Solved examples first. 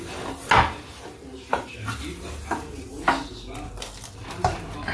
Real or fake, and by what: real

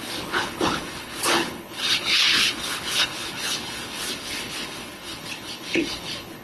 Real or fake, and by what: fake, codec, HILCodec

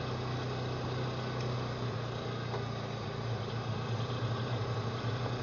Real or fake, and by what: real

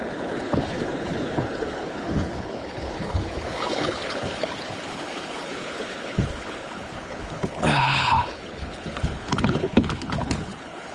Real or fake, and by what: fake, codec, HILCodec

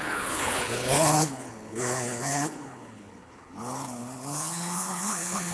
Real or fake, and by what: fake, codec, HILCodec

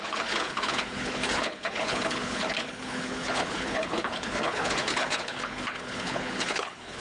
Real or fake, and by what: fake, codec, HILCodec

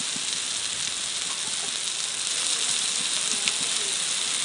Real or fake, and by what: real